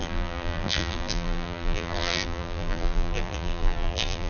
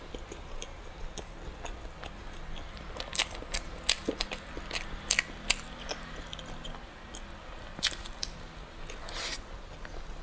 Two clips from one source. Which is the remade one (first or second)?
first